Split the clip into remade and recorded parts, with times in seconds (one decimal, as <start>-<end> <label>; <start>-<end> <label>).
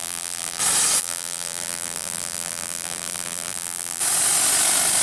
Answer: 0.0-0.6 remade; 0.6-1.0 recorded; 1.0-4.0 remade; 4.0-5.0 recorded